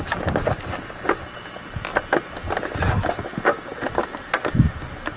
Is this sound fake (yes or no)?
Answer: no